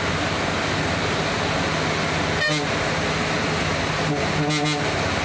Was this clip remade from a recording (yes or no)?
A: no